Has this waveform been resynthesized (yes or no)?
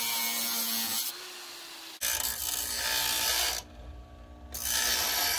no